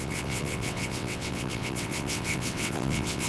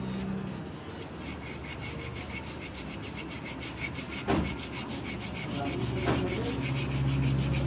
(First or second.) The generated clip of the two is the first